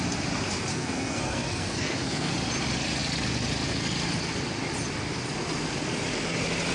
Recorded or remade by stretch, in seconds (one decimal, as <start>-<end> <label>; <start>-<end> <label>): 0.0-0.7 recorded; 0.7-2.3 remade; 2.3-6.7 recorded